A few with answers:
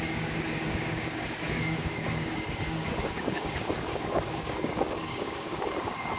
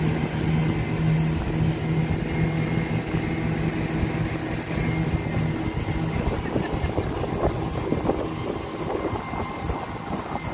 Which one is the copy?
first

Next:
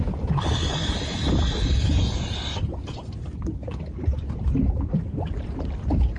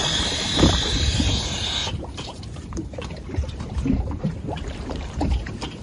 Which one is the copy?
second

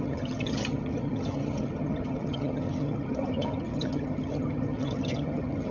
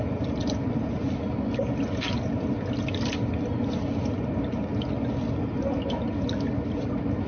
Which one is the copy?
first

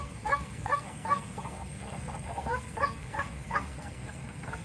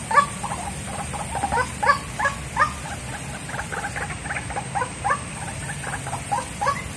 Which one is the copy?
first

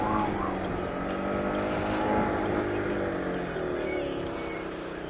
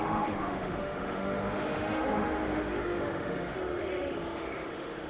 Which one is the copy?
second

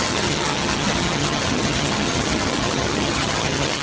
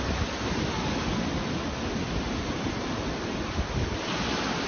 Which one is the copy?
first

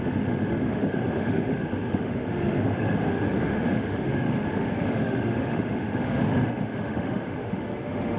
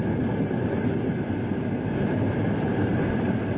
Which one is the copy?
first